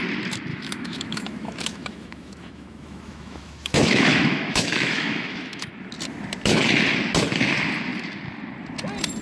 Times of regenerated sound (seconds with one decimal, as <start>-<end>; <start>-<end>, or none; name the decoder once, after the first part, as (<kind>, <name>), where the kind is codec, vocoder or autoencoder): 0.5-5.7 (autoencoder, DAC-VAE)